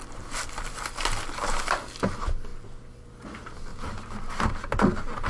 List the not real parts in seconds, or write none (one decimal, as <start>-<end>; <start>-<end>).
none

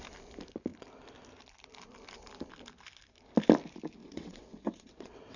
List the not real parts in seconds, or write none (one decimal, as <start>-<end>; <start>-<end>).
4.0-5.4

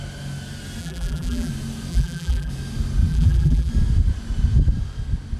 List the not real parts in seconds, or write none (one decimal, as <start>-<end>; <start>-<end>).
0.8-1.5; 1.9-2.5; 3.1-3.7

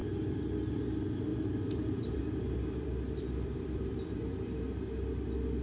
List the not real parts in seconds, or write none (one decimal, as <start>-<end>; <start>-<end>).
1.3-4.6

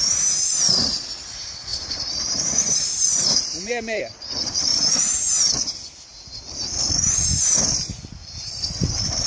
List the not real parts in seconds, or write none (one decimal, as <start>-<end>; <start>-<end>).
1.7-4.0; 4.7-5.3; 6.1-6.6

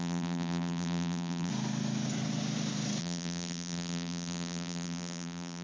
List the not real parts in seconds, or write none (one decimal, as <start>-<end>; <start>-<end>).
0.0-1.5; 3.0-5.6

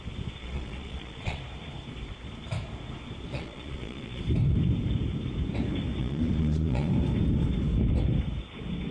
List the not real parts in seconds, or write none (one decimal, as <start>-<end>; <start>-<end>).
0.4-1.4; 3.3-4.2; 6.0-6.9

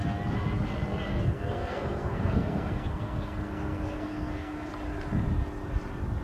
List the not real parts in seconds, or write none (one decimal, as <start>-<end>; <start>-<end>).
1.1-4.7